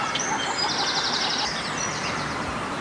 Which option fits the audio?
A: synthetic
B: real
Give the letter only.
B